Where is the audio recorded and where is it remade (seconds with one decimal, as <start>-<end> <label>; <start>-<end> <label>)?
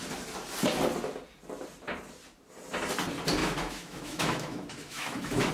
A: 0.0-3.4 recorded; 3.4-5.5 remade